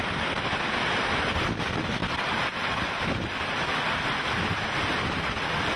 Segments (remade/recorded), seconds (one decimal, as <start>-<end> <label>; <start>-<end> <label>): 0.0-1.0 recorded; 1.0-5.8 remade